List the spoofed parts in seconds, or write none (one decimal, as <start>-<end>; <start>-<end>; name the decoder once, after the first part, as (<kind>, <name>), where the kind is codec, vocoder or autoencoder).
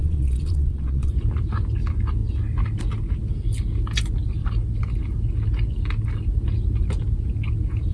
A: 0.0-1.1 (vocoder, Vocos)